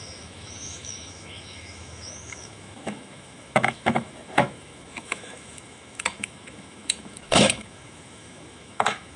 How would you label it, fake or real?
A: fake